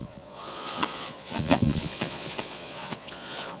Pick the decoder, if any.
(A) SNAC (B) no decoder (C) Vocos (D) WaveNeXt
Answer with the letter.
C